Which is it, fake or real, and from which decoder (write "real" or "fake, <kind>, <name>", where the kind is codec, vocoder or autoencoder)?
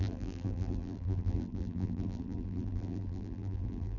fake, vocoder, BigVGAN v2